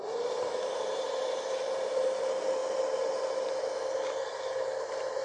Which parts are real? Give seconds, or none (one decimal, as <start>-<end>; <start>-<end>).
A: 2.0-5.2